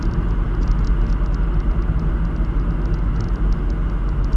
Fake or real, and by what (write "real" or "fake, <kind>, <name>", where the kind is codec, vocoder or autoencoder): real